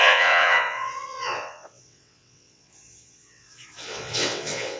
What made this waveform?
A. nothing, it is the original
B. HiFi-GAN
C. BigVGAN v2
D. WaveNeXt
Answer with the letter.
D